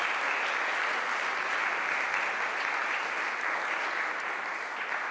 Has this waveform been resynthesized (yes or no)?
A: no